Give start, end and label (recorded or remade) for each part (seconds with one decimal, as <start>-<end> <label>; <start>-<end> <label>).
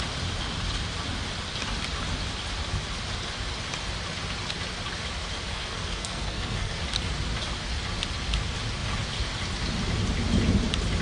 0.0-5.5 recorded; 5.5-6.8 remade; 6.8-11.0 recorded